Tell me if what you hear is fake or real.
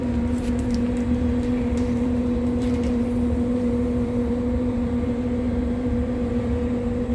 fake